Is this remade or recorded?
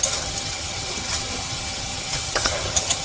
remade